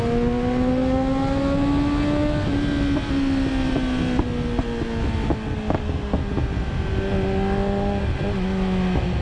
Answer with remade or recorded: recorded